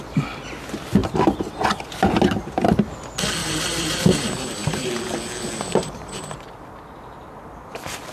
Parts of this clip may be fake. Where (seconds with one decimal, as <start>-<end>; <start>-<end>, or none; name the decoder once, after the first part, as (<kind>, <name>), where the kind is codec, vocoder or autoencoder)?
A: 1.0-2.7 (vocoder, BigVGAN v2); 3.4-4.9; 5.8-8.1